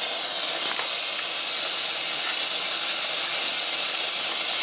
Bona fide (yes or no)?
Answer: yes